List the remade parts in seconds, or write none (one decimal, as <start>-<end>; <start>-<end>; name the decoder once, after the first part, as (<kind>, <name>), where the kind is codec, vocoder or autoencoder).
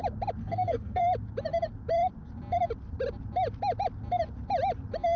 0.4-1.0 (codec, SNAC)